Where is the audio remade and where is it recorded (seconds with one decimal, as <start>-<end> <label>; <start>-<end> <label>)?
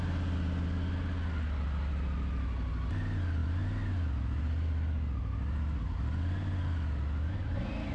0.0-7.9 recorded